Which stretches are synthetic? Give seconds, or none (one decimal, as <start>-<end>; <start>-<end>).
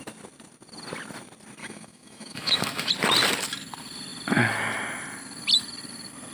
1.6-2.9